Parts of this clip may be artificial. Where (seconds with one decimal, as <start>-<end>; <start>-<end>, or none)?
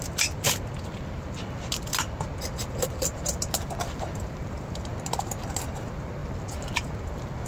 none